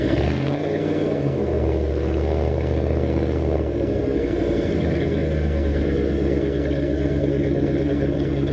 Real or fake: fake